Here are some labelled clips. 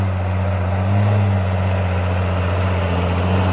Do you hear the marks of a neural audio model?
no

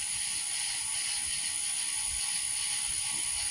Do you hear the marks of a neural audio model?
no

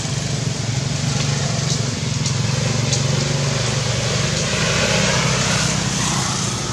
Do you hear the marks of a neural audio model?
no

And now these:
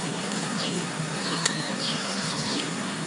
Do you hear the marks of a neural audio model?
yes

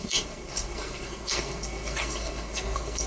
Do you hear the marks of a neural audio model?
yes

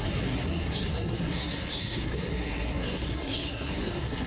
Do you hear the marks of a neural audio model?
yes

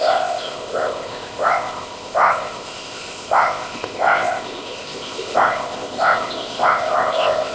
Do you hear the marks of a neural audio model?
yes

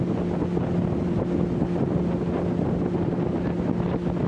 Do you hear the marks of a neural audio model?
no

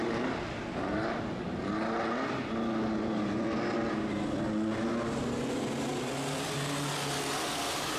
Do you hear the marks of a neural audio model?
no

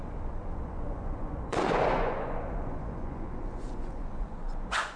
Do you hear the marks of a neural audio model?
yes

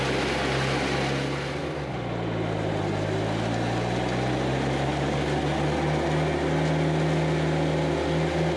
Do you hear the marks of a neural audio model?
no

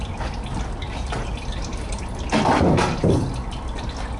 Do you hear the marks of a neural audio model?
no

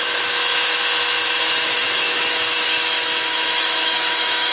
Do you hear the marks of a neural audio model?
yes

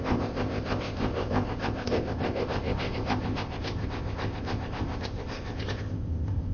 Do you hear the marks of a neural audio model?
yes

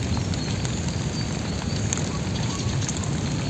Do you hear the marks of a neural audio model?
no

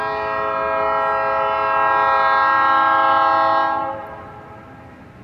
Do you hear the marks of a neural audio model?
no